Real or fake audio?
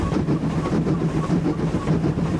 real